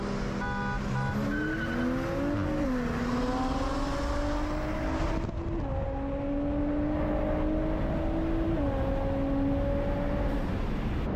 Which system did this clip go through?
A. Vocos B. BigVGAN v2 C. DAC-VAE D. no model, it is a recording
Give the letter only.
D